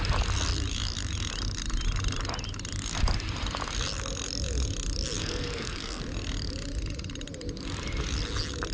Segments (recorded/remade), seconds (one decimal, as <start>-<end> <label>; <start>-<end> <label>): 0.0-5.2 recorded; 5.2-6.0 remade; 6.0-8.7 recorded